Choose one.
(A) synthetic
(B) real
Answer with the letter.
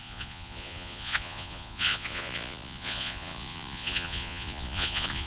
A